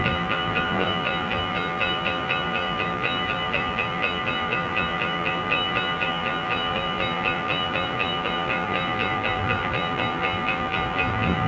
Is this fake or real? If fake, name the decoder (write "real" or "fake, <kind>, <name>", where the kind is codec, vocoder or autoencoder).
fake, vocoder, BigVGAN v2